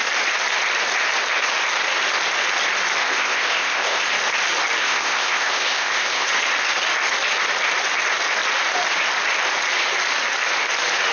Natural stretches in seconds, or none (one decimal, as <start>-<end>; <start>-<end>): 0.0-3.0; 4.0-4.8; 6.3-11.1